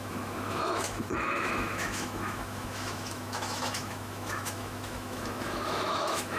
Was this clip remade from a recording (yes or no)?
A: yes